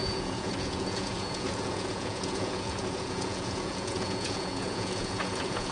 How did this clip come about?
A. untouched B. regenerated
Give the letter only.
B